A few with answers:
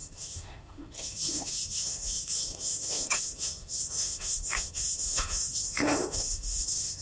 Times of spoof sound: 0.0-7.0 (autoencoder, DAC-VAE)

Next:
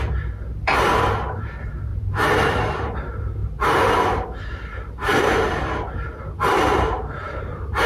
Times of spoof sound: 0.0-7.9 (vocoder, BigVGAN v2)

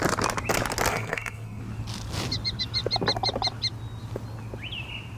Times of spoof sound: 0.9-1.6 (codec, SNAC)